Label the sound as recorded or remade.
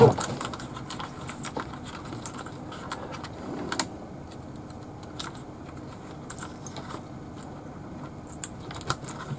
recorded